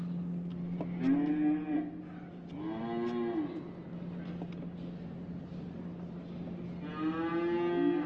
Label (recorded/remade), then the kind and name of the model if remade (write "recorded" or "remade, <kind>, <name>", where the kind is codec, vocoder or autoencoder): recorded